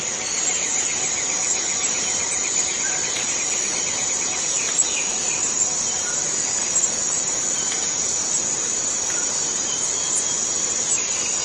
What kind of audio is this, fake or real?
real